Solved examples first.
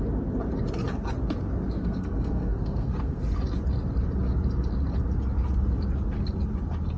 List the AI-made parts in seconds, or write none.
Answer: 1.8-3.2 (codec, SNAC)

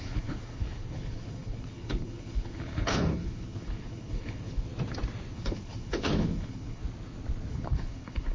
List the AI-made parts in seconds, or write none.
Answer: 0.0-4.7 (codec, HILCodec); 5.3-6.8; 7.5-8.3

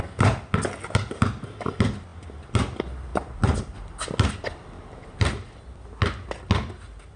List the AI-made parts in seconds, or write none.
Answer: none

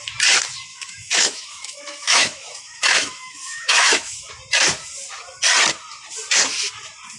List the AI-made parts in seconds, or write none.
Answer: 0.7-4.3 (autoencoder, DAC-VAE)

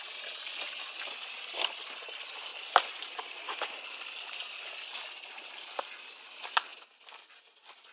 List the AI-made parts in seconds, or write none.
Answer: none

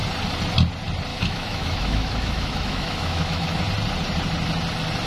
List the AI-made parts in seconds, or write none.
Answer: 1.1-3.6 (autoencoder, DAC-VAE)

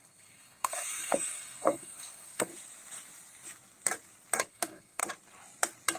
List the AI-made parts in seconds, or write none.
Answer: 0.0-2.5 (codec, SNAC); 4.5-5.0